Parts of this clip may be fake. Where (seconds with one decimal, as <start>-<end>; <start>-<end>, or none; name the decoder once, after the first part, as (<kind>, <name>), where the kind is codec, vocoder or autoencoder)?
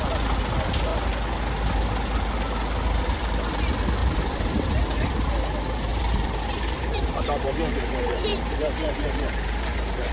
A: 4.0-4.7 (vocoder, BigVGAN v2); 5.9-7.5; 8.3-10.1